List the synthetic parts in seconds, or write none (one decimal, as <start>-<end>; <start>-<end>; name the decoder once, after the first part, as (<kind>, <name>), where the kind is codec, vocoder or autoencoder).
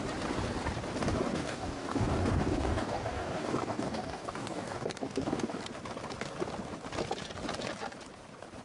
1.3-5.6 (codec, DAC)